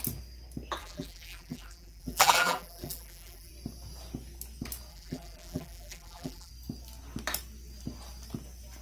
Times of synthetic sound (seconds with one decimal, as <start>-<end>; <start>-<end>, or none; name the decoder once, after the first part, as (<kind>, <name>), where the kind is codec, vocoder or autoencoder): 0.8-3.5 (vocoder, BigVGAN v2); 4.9-6.5